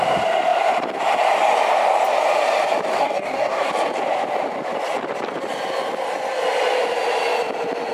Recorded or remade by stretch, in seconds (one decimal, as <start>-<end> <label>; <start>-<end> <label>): 0.0-2.9 recorded; 2.9-3.7 remade; 3.7-7.9 recorded